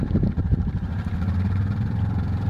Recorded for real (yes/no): no